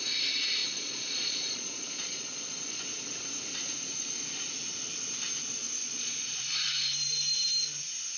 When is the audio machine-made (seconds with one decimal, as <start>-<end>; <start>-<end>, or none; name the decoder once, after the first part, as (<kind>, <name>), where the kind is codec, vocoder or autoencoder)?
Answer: 0.6-2.8 (vocoder, Vocos); 5.8-6.4